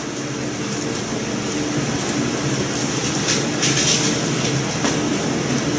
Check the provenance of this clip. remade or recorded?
recorded